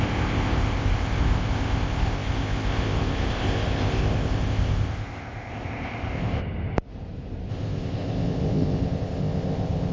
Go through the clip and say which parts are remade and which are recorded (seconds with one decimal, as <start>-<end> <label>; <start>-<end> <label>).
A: 0.0-6.4 remade; 6.4-7.5 recorded; 7.5-9.9 remade